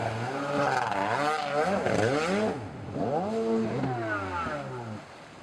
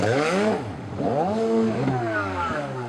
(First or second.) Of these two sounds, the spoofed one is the second